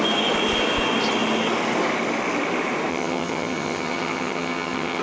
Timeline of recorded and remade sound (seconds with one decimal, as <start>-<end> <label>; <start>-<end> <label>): 0.0-2.9 recorded; 2.9-5.0 remade